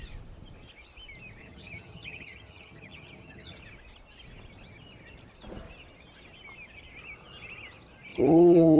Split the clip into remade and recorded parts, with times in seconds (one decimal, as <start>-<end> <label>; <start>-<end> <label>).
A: 0.0-1.4 recorded; 1.4-3.6 remade; 3.6-8.1 recorded; 8.1-8.8 remade